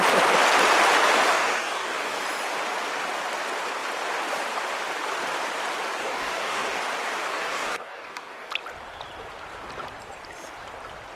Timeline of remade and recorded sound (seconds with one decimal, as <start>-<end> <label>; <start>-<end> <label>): 0.0-1.3 recorded; 1.3-2.2 remade; 2.2-6.0 recorded; 6.0-6.8 remade; 6.8-7.3 recorded; 7.3-8.5 remade; 8.5-11.2 recorded